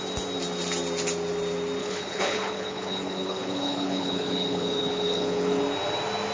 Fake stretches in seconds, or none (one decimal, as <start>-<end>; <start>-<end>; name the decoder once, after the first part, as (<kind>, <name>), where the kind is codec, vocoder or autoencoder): 1.8-5.6 (codec, HILCodec)

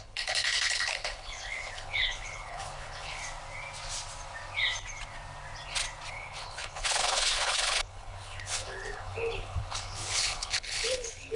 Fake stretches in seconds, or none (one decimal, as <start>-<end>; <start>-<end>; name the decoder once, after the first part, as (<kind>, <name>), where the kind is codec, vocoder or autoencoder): 0.0-3.2 (codec, HILCodec); 6.1-11.4

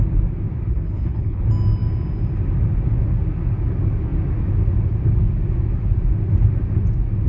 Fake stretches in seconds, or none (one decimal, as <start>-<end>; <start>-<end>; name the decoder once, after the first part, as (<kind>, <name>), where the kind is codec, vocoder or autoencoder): 0.7-1.4 (codec, HILCodec)

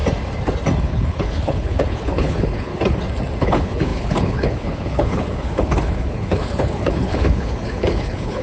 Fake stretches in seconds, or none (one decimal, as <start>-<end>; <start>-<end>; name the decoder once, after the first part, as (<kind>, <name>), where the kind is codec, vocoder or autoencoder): 0.8-2.7 (codec, HILCodec); 3.4-8.4

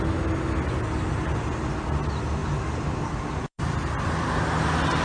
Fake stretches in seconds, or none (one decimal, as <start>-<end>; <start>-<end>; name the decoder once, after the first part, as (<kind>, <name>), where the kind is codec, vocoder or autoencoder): none